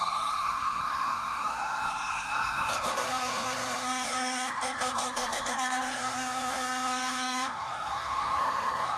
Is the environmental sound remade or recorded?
remade